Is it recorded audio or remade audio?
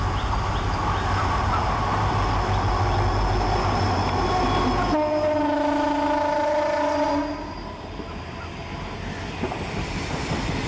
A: recorded